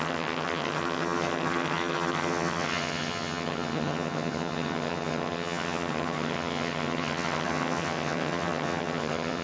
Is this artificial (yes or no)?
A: yes